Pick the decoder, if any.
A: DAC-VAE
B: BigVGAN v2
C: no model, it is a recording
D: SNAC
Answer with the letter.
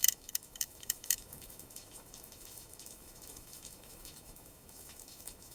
A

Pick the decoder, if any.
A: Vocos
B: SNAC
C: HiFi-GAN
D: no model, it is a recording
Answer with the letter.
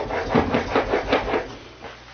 D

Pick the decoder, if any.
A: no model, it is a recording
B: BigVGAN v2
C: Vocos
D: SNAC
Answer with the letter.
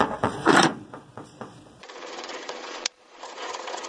C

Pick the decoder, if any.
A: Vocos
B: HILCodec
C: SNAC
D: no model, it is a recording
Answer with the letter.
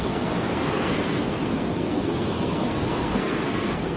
C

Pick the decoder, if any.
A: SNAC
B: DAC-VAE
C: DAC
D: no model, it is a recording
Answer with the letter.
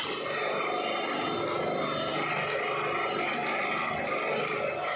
D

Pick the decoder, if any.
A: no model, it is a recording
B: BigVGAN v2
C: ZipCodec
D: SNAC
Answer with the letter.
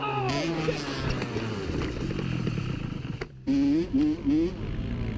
A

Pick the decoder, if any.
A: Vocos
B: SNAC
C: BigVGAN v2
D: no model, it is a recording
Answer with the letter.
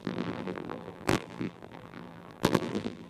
C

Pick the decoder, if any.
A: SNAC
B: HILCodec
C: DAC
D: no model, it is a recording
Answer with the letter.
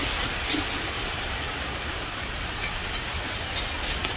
D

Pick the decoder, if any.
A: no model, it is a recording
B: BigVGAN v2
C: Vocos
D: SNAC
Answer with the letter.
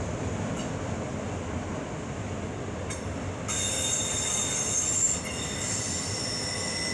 A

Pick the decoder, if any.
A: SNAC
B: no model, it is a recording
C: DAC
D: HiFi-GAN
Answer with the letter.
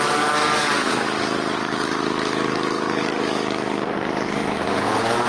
C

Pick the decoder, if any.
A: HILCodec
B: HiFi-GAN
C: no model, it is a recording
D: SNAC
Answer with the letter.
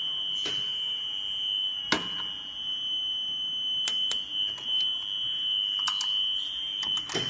C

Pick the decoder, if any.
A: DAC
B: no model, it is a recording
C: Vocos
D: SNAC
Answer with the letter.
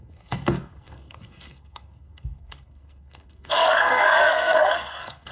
D